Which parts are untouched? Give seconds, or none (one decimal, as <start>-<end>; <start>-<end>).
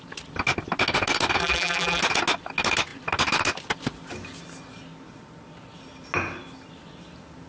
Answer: 0.0-1.4; 2.0-7.5